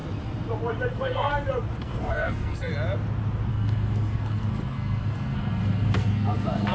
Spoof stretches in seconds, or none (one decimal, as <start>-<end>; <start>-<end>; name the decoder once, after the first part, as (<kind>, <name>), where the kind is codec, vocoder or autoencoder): 0.9-1.3 (codec, SNAC); 1.8-2.7; 3.5-6.7